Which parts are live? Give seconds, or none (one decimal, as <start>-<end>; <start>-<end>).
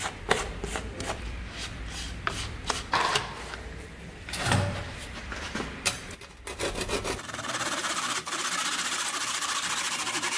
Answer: none